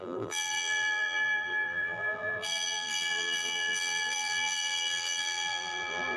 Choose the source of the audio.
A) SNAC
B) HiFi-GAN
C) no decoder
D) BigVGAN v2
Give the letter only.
D